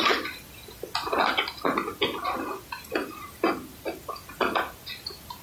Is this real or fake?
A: real